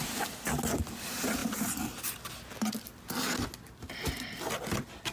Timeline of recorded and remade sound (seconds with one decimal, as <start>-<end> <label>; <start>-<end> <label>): 0.0-5.1 recorded